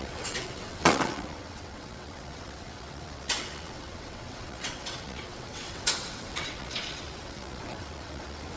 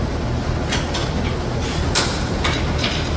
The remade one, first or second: first